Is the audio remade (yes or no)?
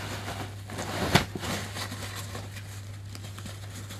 no